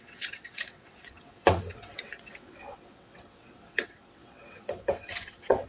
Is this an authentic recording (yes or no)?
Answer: no